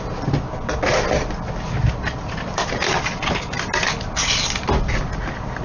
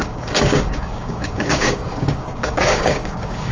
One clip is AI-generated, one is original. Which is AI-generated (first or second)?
second